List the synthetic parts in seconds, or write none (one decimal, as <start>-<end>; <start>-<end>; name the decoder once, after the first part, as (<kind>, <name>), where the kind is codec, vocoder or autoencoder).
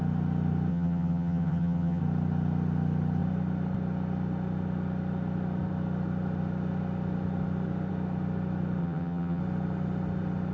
0.7-2.0 (vocoder, HiFi-GAN); 8.8-9.4